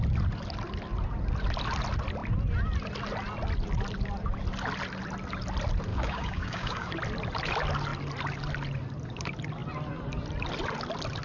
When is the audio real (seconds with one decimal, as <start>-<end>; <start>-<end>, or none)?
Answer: 0.0-5.9; 6.9-11.2